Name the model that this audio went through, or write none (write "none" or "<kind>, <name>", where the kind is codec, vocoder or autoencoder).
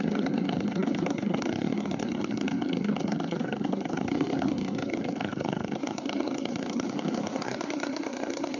codec, SNAC